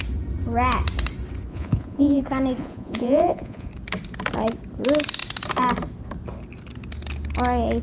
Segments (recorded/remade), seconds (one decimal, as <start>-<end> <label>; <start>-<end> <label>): 0.0-1.5 recorded; 1.5-2.2 remade; 2.2-2.6 recorded; 2.6-3.7 remade; 3.7-7.8 recorded